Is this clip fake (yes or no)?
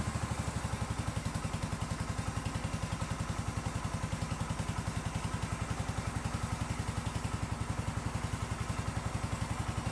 no